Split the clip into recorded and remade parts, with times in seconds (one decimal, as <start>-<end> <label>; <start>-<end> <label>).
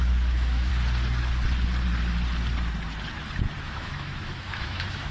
0.0-0.7 remade; 0.7-3.6 recorded; 3.6-5.1 remade